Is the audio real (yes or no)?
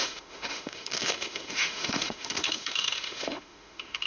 no